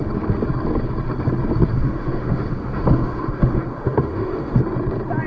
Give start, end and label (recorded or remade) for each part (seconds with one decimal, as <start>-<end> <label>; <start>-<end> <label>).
0.0-1.7 recorded; 1.7-4.6 remade; 4.6-5.3 recorded